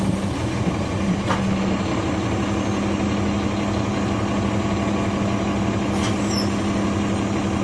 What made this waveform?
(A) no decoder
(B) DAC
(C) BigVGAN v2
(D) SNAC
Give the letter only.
A